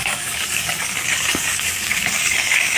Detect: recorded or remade remade